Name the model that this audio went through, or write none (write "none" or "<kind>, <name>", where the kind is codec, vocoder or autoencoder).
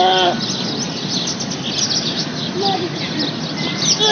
none